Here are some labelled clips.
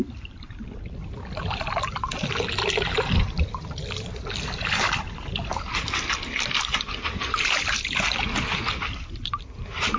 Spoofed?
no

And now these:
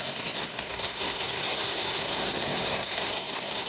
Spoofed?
yes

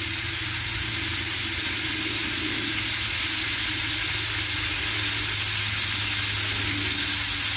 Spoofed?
no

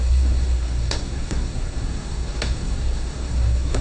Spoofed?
yes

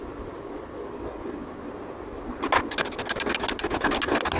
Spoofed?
no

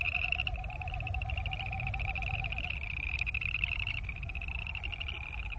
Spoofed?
no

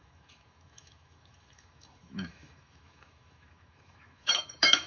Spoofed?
yes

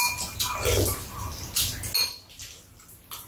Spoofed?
no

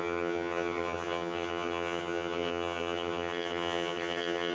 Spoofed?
yes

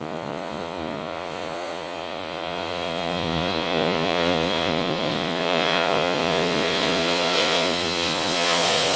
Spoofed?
yes